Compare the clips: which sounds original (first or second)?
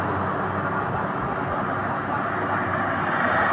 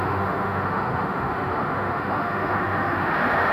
first